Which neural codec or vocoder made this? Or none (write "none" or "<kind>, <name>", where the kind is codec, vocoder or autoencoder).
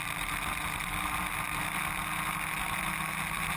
none